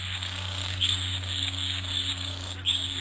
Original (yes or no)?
no